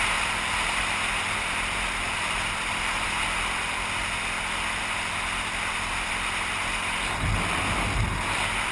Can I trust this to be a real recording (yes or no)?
yes